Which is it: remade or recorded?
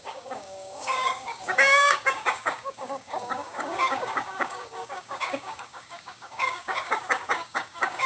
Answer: remade